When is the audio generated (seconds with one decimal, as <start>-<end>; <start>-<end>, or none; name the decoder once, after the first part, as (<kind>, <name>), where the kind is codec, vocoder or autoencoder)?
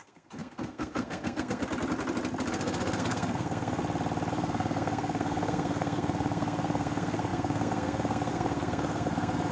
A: 0.0-1.6 (codec, SNAC); 2.5-3.8; 4.3-9.5